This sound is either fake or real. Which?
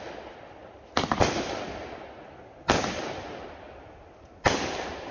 real